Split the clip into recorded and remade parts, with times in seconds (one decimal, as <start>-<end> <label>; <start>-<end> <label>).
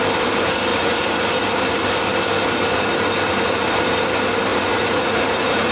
0.0-0.7 recorded; 0.7-1.3 remade; 1.3-4.5 recorded; 4.5-5.7 remade